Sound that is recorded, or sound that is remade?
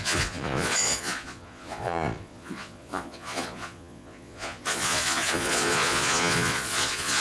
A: remade